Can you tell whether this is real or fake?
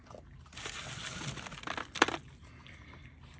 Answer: real